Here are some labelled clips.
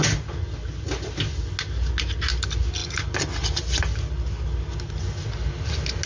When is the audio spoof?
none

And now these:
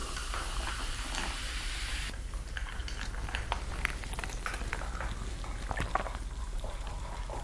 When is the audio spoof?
0.0-2.8 (vocoder, BigVGAN v2); 6.4-7.4

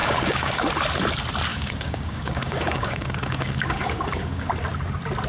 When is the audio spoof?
0.0-0.7 (codec, DAC); 1.5-4.5

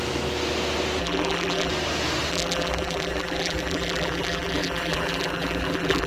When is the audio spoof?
1.0-1.7 (vocoder, BigVGAN v2); 2.3-6.1

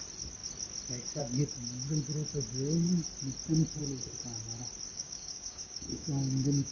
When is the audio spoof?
4.9-6.7 (codec, DAC)

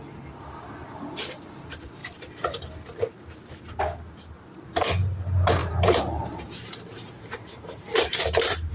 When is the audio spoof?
2.0-2.6 (vocoder, BigVGAN v2); 5.6-8.7

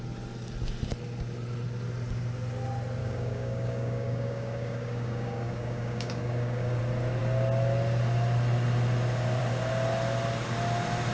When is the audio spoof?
3.0-6.8 (codec, DAC)